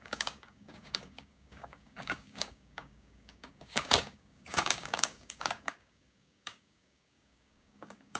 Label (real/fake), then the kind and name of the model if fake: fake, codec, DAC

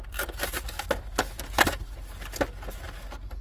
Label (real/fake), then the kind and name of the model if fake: real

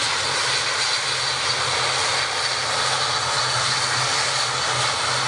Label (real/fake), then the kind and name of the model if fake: real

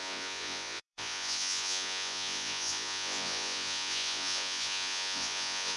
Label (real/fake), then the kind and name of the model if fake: fake, vocoder, Vocos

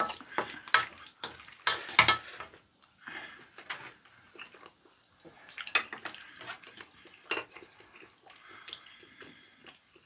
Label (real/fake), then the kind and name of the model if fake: real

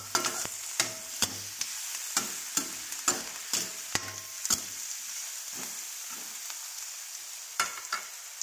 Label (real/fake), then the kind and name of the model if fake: real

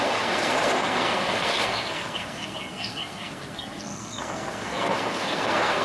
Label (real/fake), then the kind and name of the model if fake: fake, codec, SNAC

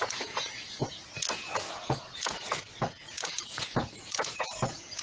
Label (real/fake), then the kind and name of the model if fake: fake, vocoder, Vocos